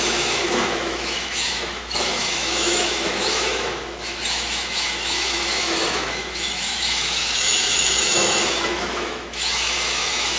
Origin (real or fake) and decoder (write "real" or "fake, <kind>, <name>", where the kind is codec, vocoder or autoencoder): fake, autoencoder, DAC-VAE